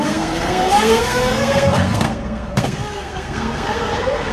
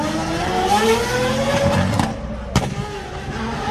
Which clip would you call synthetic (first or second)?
first